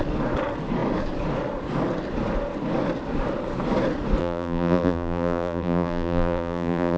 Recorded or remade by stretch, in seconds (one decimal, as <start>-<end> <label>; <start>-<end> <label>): 0.0-4.2 recorded; 4.2-7.0 remade